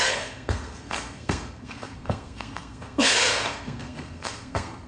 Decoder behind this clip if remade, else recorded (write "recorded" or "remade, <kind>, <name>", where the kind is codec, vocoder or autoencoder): remade, codec, SNAC